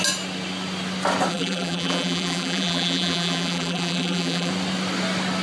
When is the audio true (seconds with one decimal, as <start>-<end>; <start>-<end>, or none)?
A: 0.0-1.3; 4.5-5.4